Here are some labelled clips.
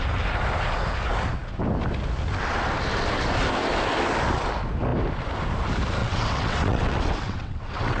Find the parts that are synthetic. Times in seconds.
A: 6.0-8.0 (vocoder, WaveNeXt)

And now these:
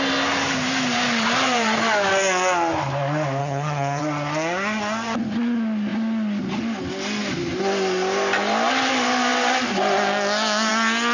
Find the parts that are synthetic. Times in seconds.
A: 3.4-4.0 (vocoder, HiFi-GAN)

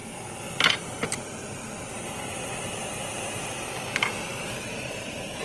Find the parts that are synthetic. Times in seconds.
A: 1.4-2.4 (vocoder, BigVGAN v2); 4.6-5.4

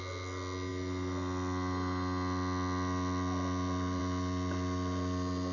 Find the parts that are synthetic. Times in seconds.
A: none

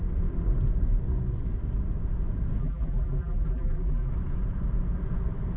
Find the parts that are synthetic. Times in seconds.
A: 2.6-4.1 (vocoder, BigVGAN v2)

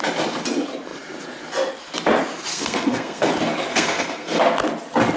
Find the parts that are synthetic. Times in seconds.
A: 2.5-3.3 (codec, SNAC); 3.7-4.4

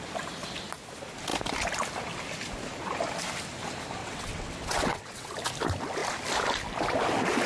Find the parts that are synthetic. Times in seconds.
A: 4.0-5.3 (vocoder, WaveNeXt)

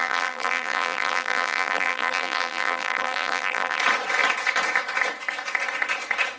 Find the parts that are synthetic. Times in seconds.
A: 0.0-3.8 (vocoder, BigVGAN v2)